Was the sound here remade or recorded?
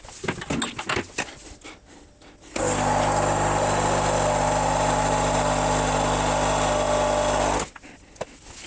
recorded